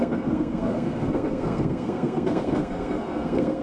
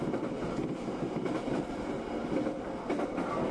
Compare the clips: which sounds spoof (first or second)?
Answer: first